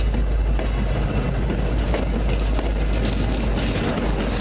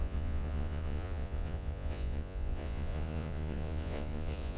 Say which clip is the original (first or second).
first